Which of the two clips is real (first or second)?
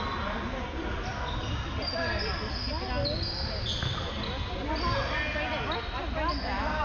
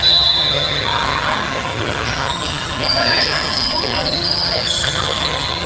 first